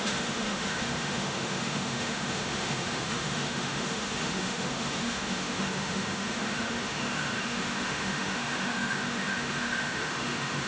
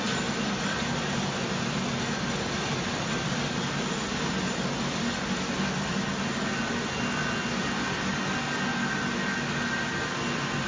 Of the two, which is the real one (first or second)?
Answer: second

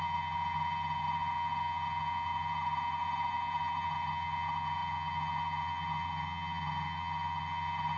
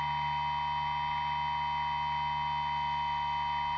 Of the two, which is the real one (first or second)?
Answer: second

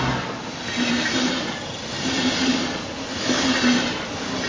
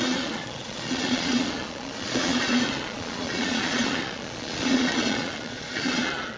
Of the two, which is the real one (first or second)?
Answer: first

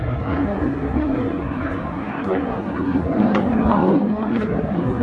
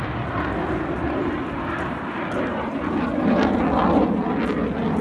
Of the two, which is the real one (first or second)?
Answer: second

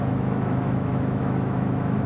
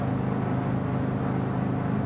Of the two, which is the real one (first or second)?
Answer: second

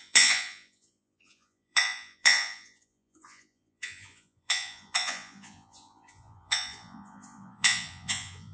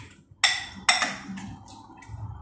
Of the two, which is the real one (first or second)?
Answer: second